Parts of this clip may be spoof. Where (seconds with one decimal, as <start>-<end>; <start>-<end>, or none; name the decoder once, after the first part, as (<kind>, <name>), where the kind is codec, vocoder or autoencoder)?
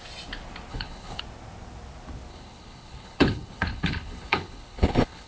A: 0.7-1.2 (codec, HILCodec); 2.3-5.3